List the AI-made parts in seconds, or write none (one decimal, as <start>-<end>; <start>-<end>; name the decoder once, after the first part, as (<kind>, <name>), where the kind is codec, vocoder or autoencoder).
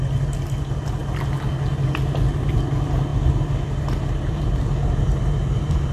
none